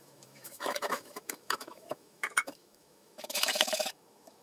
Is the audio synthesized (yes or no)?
yes